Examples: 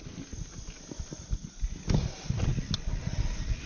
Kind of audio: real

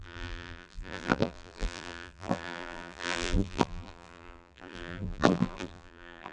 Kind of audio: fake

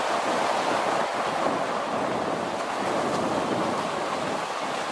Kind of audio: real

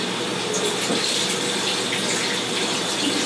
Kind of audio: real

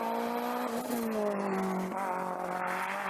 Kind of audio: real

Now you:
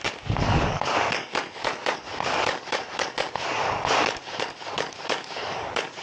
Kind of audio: fake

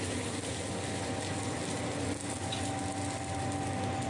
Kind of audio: real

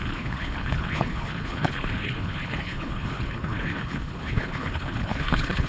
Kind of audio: fake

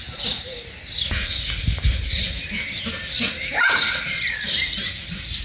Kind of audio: real